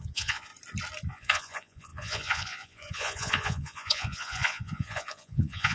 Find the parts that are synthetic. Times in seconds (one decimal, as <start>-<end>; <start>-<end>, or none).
0.0-0.5; 1.1-5.7